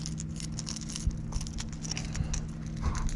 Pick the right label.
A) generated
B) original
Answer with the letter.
B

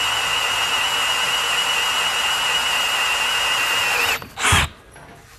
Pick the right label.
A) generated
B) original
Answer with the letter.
B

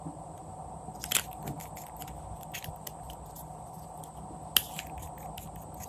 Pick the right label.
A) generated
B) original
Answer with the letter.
B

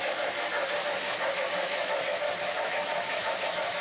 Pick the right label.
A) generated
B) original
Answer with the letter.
A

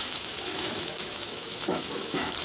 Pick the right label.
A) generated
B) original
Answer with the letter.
A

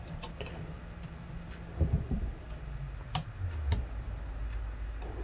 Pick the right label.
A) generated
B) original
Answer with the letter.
B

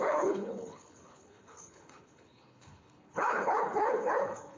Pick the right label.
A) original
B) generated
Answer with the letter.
B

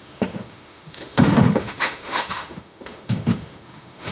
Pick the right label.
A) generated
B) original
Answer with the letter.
A